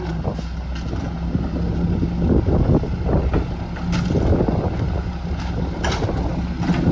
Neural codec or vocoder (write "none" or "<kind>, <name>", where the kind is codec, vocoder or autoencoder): none